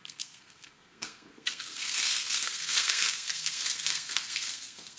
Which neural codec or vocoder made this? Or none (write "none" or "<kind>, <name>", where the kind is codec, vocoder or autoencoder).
codec, SNAC